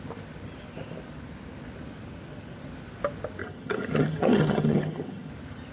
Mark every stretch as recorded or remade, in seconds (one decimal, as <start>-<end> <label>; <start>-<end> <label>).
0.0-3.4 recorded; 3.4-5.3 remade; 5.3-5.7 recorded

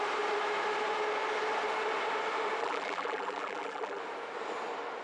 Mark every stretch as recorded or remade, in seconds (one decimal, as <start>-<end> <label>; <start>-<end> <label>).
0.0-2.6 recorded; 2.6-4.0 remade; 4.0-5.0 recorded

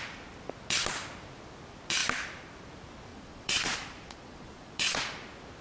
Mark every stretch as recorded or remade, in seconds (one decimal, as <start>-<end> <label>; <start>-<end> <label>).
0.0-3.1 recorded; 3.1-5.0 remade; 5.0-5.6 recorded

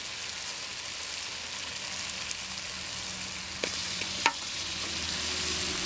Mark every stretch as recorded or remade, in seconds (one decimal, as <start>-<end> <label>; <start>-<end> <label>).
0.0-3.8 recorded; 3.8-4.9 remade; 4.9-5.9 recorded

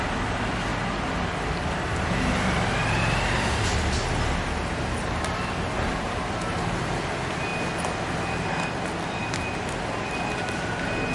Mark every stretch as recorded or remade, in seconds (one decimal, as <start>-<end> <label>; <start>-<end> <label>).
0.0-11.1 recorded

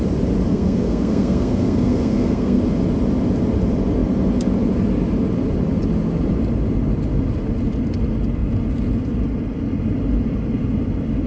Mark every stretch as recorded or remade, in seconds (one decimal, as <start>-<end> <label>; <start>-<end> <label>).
0.0-0.5 recorded; 0.5-2.6 remade; 2.6-11.3 recorded

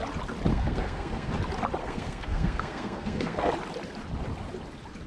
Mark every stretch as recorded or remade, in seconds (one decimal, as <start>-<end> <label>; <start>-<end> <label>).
0.0-0.5 recorded; 0.5-1.3 remade; 1.3-1.8 recorded; 1.8-3.5 remade; 3.5-5.1 recorded

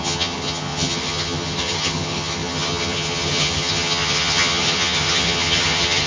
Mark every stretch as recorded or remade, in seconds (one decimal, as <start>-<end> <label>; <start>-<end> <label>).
0.0-6.1 remade